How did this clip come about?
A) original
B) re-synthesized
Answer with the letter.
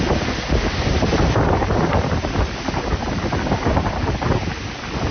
A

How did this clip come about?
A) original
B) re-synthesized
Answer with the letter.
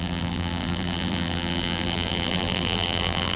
B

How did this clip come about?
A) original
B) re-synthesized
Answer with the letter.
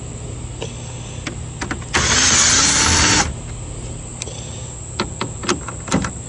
A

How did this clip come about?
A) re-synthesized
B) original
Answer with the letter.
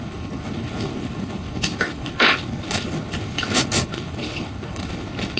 A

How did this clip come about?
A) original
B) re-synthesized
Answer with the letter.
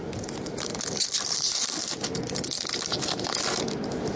A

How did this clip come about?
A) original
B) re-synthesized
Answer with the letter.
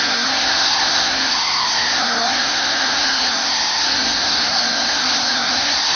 B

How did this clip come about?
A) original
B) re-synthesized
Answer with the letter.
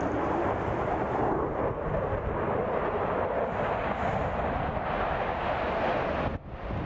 A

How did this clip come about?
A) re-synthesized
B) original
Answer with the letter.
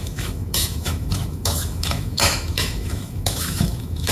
A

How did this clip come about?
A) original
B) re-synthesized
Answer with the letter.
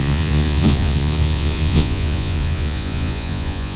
B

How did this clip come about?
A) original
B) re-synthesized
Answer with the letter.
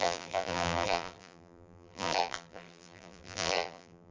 B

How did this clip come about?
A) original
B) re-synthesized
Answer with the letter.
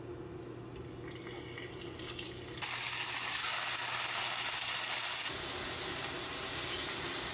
A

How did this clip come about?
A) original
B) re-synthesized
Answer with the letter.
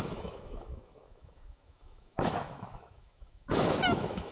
B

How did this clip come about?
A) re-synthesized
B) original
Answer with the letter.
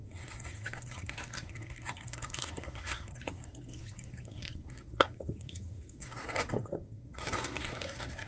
A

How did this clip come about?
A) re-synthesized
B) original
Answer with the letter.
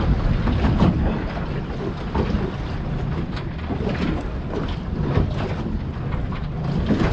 B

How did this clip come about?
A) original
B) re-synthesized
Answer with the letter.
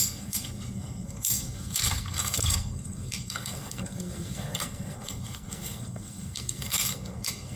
B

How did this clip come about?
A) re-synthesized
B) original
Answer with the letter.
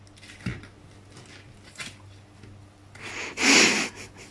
B